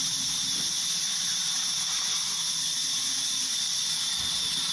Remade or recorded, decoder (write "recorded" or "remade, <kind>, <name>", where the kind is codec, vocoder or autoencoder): recorded